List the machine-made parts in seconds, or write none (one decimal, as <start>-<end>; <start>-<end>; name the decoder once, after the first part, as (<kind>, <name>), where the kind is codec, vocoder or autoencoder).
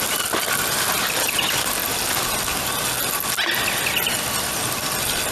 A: none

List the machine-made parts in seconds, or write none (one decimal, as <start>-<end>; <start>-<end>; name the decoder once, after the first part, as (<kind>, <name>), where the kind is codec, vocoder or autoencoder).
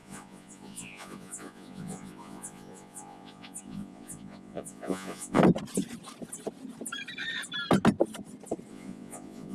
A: 0.0-5.4 (vocoder, Vocos); 8.7-9.5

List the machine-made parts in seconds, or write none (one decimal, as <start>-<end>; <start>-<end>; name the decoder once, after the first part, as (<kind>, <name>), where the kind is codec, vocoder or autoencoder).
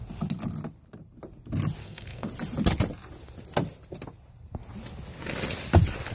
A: 1.8-2.3 (codec, SNAC)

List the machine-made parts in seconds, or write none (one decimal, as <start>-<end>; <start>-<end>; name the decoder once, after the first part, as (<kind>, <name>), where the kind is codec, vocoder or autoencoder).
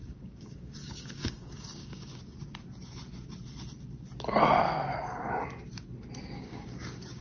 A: 0.0-2.1 (codec, DAC); 6.3-7.2